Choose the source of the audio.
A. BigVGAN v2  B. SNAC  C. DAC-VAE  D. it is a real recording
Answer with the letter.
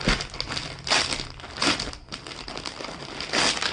D